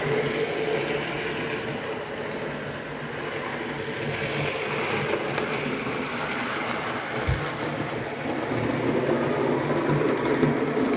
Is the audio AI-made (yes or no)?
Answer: no